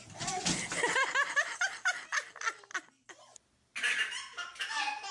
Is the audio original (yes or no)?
yes